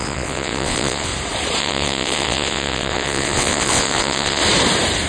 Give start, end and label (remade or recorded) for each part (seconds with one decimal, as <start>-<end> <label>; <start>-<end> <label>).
0.0-1.1 remade; 1.1-1.6 recorded; 1.6-4.4 remade; 4.4-5.1 recorded